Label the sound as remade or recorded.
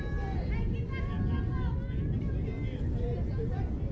recorded